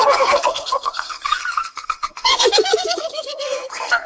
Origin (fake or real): fake